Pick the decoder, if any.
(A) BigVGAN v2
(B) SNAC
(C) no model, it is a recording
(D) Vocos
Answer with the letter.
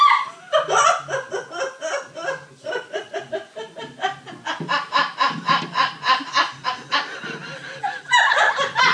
C